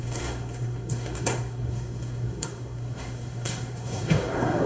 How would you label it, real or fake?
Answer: fake